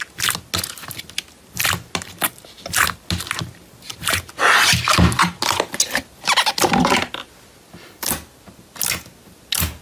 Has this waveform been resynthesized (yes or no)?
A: no